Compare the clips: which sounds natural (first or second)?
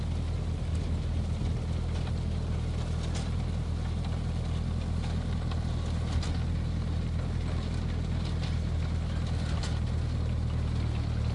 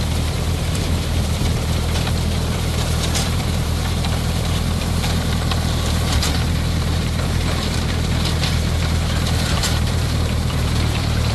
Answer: first